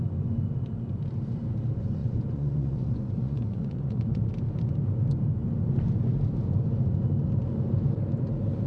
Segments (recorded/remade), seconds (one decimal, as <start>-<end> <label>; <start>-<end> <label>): 0.0-2.0 recorded; 2.0-4.3 remade; 4.3-8.7 recorded